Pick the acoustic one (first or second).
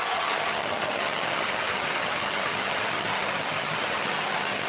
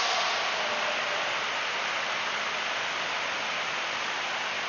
second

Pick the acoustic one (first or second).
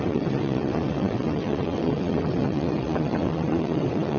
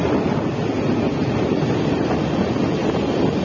second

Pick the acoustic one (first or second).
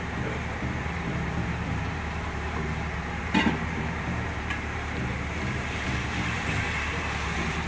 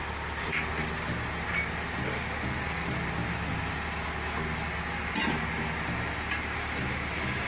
second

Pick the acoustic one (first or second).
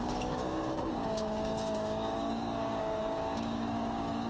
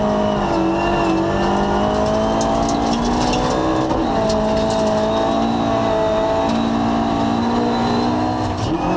second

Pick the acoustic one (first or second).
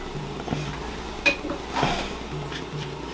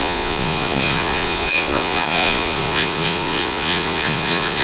first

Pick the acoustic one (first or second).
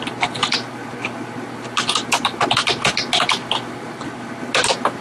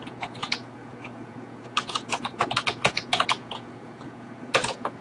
first